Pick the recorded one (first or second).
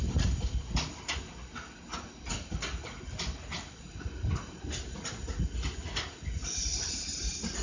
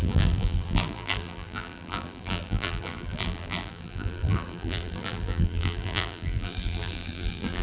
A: first